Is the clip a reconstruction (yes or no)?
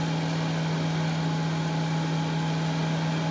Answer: no